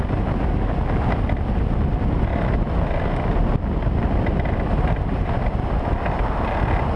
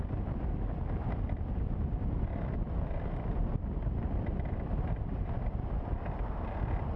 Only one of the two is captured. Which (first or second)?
first